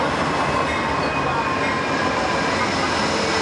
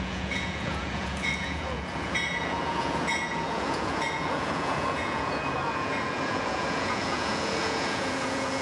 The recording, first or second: first